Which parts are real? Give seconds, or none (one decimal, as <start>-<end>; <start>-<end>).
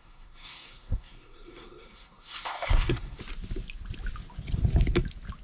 3.2-5.4